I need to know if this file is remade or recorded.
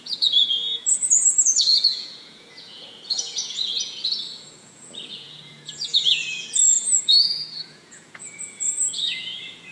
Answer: remade